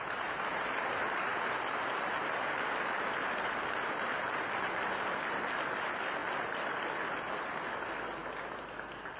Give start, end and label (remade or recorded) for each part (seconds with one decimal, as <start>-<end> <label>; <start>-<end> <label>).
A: 0.0-9.2 recorded